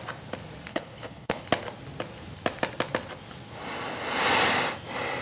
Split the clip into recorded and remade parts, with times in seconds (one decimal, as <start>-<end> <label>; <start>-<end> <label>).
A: 0.0-0.7 recorded; 0.7-1.4 remade; 1.4-5.2 recorded